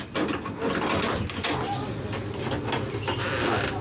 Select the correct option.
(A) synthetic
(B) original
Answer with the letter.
B